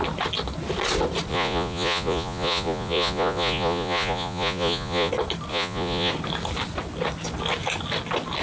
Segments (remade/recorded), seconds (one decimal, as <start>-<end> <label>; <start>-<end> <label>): 0.0-1.3 recorded; 1.3-5.1 remade; 5.1-5.5 recorded; 5.5-6.1 remade; 6.1-8.4 recorded